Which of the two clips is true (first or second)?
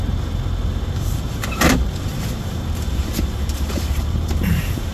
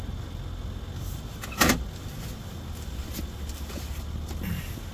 second